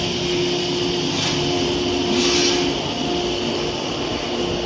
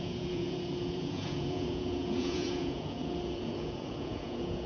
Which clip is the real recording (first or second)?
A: first